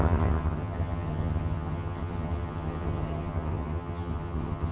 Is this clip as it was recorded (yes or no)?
no